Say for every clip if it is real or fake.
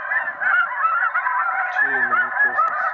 fake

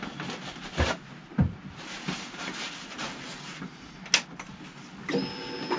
real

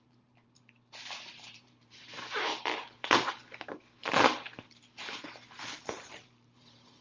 fake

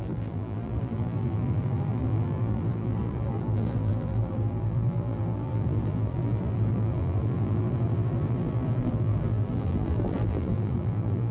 fake